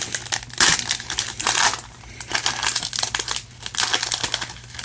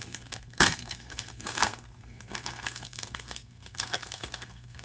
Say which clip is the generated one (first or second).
second